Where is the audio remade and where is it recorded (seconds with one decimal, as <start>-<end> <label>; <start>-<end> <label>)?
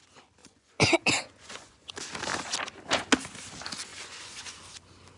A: 0.0-0.4 recorded; 0.4-1.9 remade; 1.9-3.9 recorded; 3.9-4.6 remade; 4.6-5.2 recorded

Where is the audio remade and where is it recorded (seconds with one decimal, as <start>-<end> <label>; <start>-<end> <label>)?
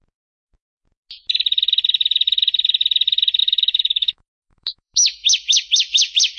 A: 0.0-3.4 recorded; 3.4-6.4 remade